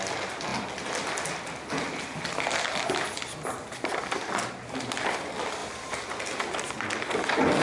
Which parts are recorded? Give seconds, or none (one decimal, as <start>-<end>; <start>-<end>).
0.0-7.6